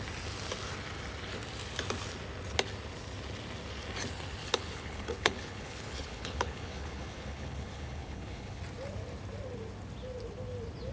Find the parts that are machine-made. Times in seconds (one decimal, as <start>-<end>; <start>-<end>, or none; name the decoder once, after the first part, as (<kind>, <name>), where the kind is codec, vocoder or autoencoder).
4.4-8.6 (codec, HILCodec)